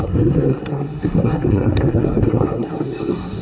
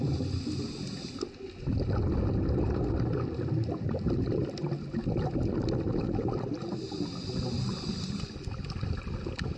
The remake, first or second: first